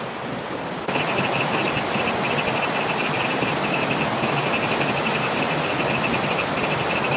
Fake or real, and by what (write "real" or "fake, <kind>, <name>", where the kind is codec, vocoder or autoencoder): real